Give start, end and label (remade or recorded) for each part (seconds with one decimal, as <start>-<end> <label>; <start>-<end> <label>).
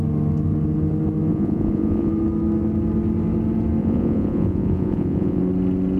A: 0.0-1.3 recorded; 1.3-2.1 remade; 2.1-3.8 recorded; 3.8-5.4 remade; 5.4-6.0 recorded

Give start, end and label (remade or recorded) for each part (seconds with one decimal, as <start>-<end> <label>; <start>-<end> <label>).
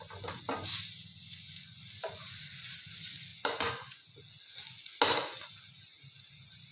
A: 0.0-1.1 recorded; 1.1-1.8 remade; 1.8-3.3 recorded; 3.3-4.1 remade; 4.1-6.7 recorded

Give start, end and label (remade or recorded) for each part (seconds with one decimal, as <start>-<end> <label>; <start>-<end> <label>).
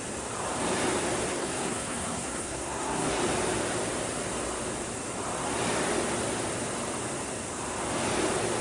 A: 0.0-1.3 recorded; 1.3-3.2 remade; 3.2-8.6 recorded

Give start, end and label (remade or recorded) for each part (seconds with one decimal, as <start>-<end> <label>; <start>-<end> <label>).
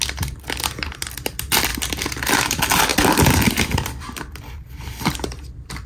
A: 0.0-2.9 recorded; 2.9-5.9 remade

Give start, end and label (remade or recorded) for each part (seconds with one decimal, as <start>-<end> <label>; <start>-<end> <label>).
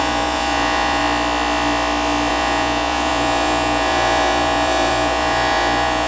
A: 0.0-1.0 remade; 1.0-2.3 recorded; 2.3-6.1 remade